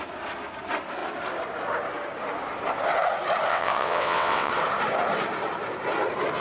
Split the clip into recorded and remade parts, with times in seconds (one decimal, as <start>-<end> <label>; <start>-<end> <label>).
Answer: 0.0-3.5 recorded; 3.5-4.5 remade; 4.5-6.4 recorded